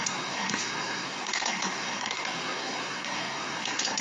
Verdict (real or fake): fake